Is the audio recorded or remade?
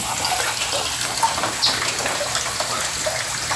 recorded